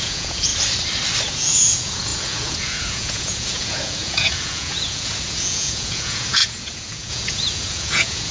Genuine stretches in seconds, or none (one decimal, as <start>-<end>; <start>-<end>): 0.5-1.3